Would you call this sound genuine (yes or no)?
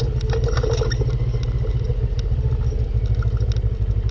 yes